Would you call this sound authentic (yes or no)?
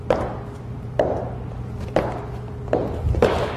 yes